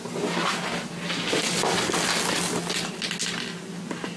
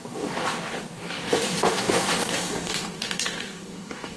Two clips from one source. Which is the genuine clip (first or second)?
first